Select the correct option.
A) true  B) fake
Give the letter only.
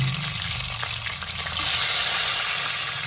A